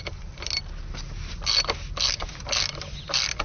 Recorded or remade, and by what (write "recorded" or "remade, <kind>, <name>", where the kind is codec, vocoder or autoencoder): recorded